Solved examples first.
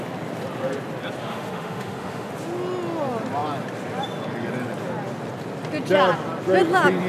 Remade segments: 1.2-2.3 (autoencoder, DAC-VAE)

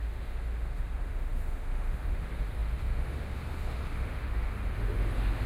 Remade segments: 0.0-5.5 (autoencoder, DAC-VAE)

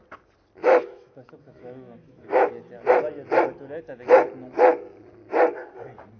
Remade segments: 0.6-2.5 (autoencoder, DAC-VAE)

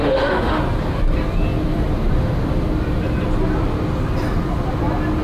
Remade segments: 0.0-0.6 (autoencoder, DAC-VAE)

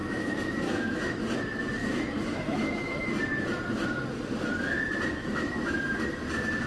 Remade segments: 0.0-1.2 (autoencoder, DAC-VAE); 1.8-3.1; 5.2-6.0

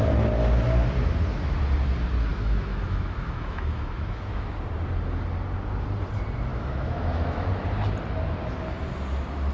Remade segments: 2.3-4.5 (autoencoder, DAC-VAE); 6.5-7.5